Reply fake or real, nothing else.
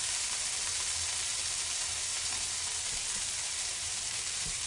real